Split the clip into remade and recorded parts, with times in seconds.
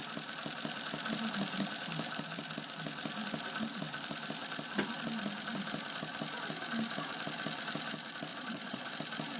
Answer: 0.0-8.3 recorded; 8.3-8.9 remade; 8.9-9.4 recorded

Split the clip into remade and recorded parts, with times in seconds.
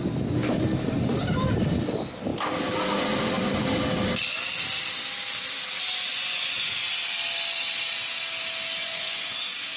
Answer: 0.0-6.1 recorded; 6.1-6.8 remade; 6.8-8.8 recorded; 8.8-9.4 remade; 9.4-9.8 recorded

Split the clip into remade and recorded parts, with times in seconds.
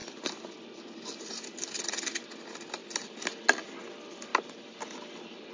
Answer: 0.0-5.5 recorded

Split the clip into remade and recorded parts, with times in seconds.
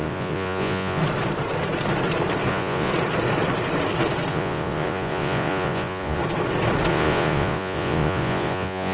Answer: 0.0-1.0 remade; 1.0-2.5 recorded; 2.5-2.9 remade; 2.9-4.3 recorded; 4.3-6.2 remade; 6.2-6.9 recorded; 6.9-8.9 remade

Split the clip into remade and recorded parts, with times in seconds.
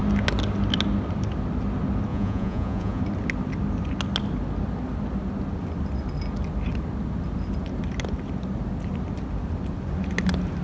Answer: 0.0-2.1 recorded; 2.1-3.0 remade; 3.0-10.6 recorded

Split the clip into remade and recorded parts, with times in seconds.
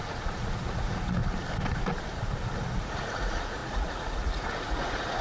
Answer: 0.0-1.2 remade; 1.2-2.8 recorded; 2.8-5.2 remade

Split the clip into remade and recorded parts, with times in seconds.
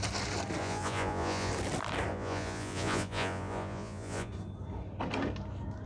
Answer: 0.0-0.6 recorded; 0.6-1.5 remade; 1.5-2.1 recorded; 2.1-4.3 remade; 4.3-5.9 recorded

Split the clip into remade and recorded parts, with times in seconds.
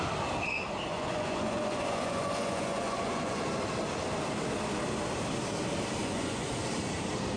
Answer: 0.0-0.9 recorded; 0.9-3.4 remade; 3.4-6.0 recorded; 6.0-6.5 remade; 6.5-7.4 recorded